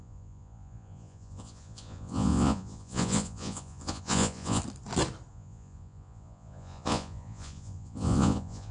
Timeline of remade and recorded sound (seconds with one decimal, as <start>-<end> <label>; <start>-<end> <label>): 0.0-4.6 remade; 4.6-5.3 recorded; 5.3-8.7 remade